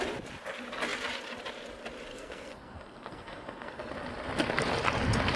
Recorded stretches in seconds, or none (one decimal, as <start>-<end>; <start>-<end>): 0.0-2.1; 3.9-5.4